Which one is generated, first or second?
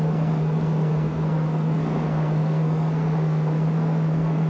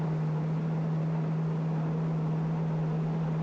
first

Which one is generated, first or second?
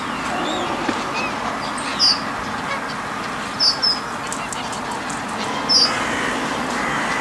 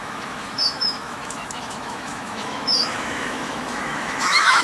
second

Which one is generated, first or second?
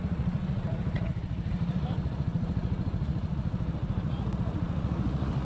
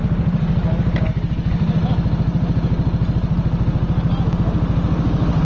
first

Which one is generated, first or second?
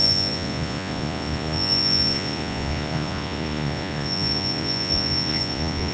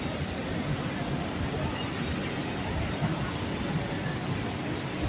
first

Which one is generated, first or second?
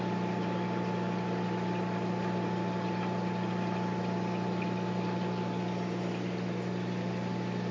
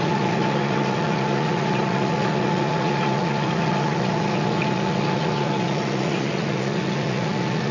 second